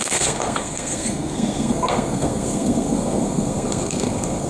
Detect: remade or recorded remade